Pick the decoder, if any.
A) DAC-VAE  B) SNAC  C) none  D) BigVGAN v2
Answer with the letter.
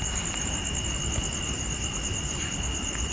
C